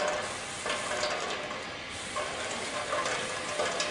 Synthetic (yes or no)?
no